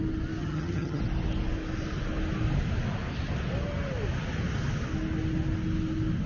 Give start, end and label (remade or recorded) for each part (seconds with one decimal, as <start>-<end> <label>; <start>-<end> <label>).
0.0-0.4 recorded; 0.4-1.0 remade; 1.0-6.3 recorded